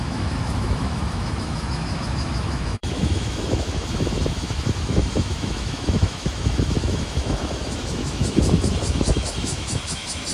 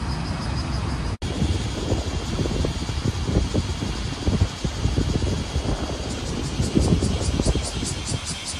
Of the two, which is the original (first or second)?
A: second